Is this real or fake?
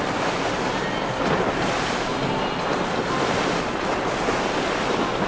real